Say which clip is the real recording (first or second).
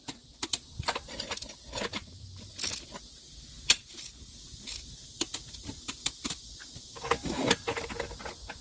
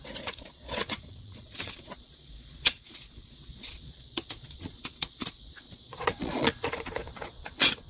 first